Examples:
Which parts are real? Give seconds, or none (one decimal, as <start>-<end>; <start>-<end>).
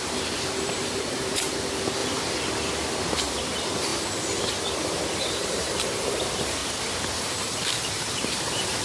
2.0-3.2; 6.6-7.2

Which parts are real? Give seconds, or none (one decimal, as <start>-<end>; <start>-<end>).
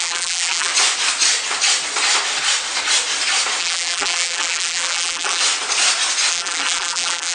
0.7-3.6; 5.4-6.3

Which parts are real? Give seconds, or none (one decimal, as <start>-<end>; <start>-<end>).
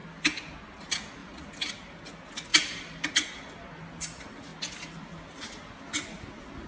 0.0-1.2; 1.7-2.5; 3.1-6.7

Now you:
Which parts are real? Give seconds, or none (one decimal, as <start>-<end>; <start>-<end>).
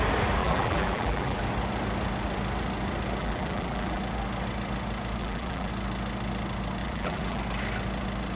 0.0-0.4; 1.4-3.2; 4.0-5.2; 5.7-6.8; 7.4-8.4